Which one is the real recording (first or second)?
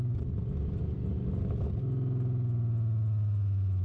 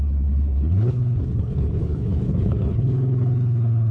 first